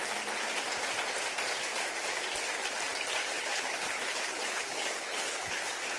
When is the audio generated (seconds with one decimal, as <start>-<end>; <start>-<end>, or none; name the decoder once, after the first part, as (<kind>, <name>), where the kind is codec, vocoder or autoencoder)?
3.2-5.6 (codec, HILCodec)